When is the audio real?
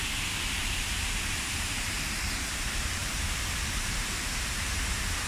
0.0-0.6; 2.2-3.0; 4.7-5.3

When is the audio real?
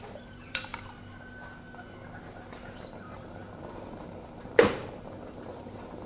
0.7-2.7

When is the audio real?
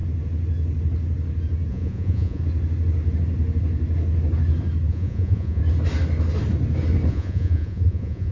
0.0-1.7; 2.4-4.9; 5.6-7.1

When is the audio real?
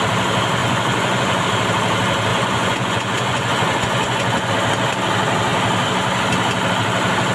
0.0-0.6; 1.4-2.3; 4.5-7.3